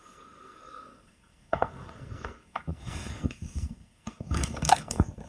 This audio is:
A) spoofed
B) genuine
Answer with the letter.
A